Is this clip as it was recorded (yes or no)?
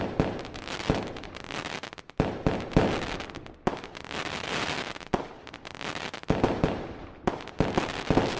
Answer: yes